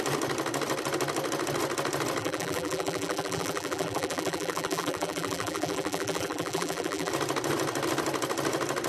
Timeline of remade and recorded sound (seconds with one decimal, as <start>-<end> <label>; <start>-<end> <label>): 0.0-2.2 recorded; 2.2-7.1 remade; 7.1-8.9 recorded